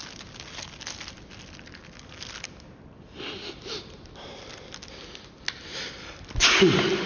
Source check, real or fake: real